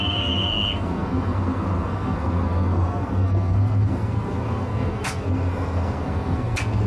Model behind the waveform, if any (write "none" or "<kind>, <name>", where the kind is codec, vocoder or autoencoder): codec, SNAC